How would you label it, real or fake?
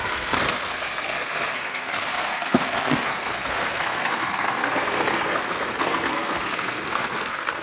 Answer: fake